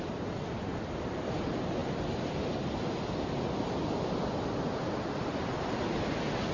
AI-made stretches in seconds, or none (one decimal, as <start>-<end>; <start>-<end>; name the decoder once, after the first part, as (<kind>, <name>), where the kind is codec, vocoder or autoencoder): none